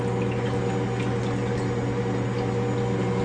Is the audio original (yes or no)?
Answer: yes